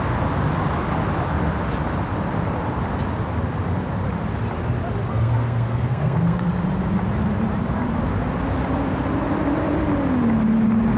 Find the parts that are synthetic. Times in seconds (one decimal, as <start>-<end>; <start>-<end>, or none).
5.1-6.5